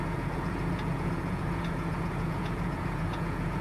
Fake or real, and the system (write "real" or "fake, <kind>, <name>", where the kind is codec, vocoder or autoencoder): fake, vocoder, Vocos